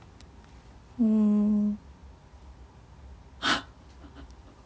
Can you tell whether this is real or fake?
real